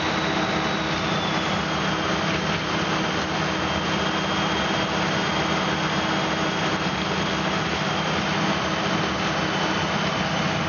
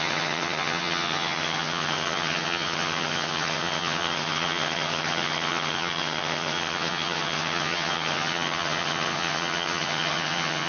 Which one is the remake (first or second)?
second